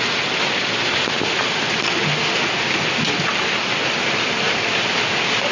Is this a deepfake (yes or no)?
no